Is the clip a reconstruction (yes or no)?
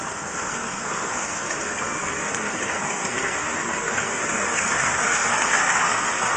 yes